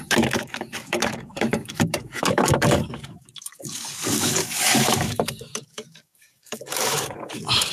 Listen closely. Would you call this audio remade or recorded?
remade